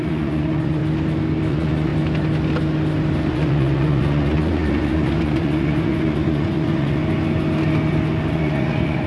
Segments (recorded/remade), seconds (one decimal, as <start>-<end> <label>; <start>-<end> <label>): 0.0-0.8 remade; 0.8-1.5 recorded; 1.5-1.9 remade; 1.9-3.3 recorded; 3.3-7.0 remade; 7.0-8.3 recorded; 8.3-9.1 remade